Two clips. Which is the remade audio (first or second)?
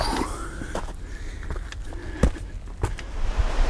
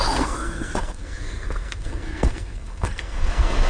second